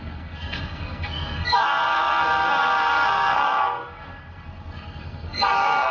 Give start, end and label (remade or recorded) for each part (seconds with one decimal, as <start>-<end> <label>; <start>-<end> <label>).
0.0-5.9 remade